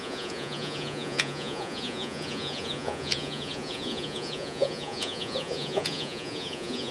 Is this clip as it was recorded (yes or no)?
no